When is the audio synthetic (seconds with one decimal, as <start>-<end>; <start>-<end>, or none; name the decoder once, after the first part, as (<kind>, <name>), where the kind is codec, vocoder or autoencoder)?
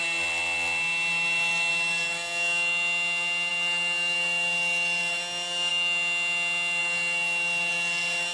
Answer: none